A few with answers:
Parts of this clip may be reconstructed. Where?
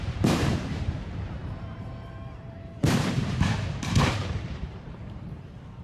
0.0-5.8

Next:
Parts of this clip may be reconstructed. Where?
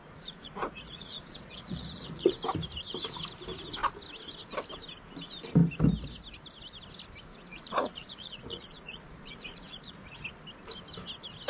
0.0-2.3; 7.3-10.2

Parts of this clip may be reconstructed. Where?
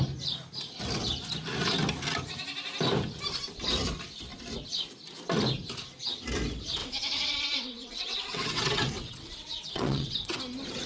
6.8-10.4